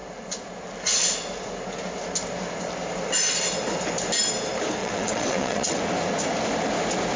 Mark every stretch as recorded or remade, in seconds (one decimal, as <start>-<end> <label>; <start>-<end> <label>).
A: 0.0-4.8 recorded; 4.8-5.8 remade; 5.8-7.2 recorded